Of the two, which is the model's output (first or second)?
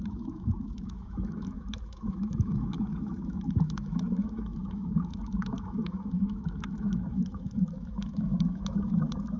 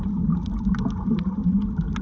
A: first